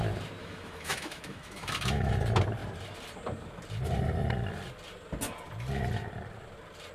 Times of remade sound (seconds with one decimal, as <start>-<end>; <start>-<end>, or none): 0.4-2.1